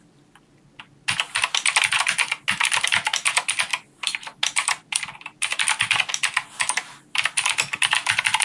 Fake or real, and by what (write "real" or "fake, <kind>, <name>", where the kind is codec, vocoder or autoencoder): real